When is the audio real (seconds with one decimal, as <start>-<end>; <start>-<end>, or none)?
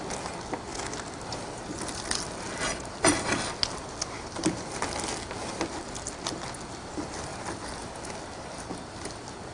0.0-9.5